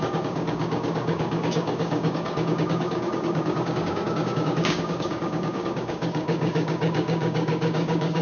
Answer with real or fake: fake